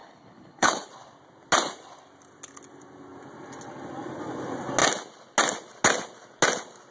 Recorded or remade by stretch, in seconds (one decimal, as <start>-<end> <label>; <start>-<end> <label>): 0.0-0.9 remade; 0.9-6.9 recorded